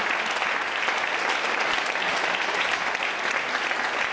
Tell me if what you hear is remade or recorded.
recorded